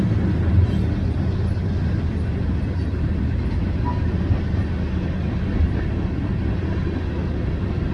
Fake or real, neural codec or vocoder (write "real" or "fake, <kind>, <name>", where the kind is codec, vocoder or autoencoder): real